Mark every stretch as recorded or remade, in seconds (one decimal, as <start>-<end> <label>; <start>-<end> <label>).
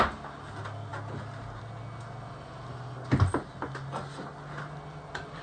0.0-5.4 recorded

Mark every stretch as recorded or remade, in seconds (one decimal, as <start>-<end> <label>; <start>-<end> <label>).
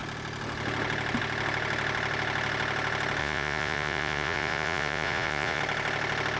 0.0-3.2 recorded; 3.2-5.6 remade; 5.6-6.4 recorded